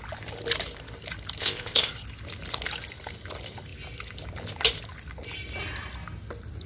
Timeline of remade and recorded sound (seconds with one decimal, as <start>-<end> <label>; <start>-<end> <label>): 0.0-1.4 recorded; 1.4-1.9 remade; 1.9-6.7 recorded